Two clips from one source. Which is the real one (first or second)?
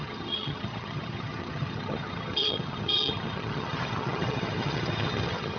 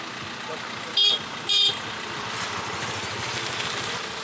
second